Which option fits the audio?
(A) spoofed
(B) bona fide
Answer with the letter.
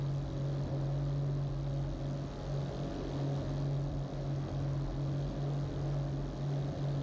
B